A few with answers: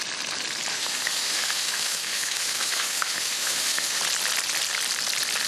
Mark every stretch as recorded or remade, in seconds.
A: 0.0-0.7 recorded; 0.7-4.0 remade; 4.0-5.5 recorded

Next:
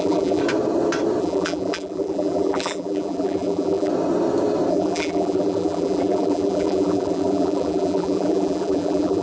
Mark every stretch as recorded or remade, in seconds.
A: 0.0-0.4 remade; 0.4-1.2 recorded; 1.2-3.9 remade; 3.9-4.7 recorded; 4.7-9.2 remade

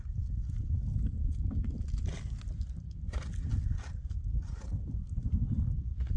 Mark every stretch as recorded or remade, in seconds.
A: 0.0-6.2 remade

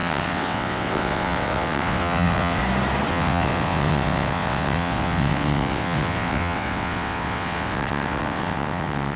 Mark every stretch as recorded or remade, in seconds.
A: 0.0-2.6 remade; 2.6-3.1 recorded; 3.1-9.2 remade

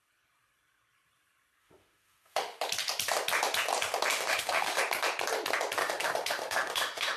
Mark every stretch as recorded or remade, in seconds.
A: 0.0-1.6 recorded; 1.6-2.6 remade; 2.6-4.1 recorded; 4.1-4.8 remade; 4.8-5.8 recorded; 5.8-7.2 remade

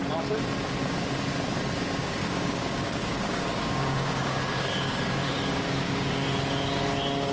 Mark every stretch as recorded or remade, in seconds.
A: 0.0-2.0 recorded; 2.0-6.2 remade; 6.2-7.3 recorded

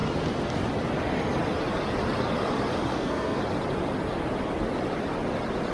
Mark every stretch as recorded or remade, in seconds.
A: 0.0-2.9 recorded; 2.9-3.4 remade; 3.4-5.7 recorded

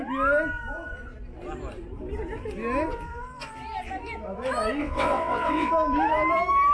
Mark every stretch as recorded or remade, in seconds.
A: 0.0-4.8 recorded; 4.8-5.7 remade; 5.7-6.7 recorded